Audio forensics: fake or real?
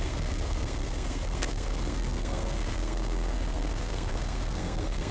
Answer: fake